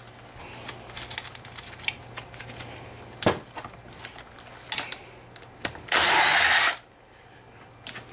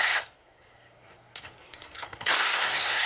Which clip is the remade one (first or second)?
second